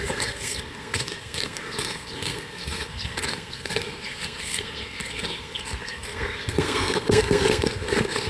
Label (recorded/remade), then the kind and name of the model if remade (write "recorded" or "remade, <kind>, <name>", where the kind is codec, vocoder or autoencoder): remade, codec, SNAC